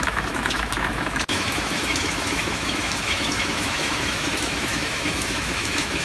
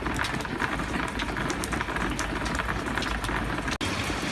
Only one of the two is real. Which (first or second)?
second